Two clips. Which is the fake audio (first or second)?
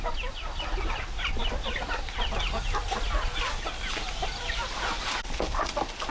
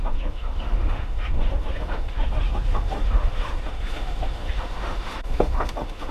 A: second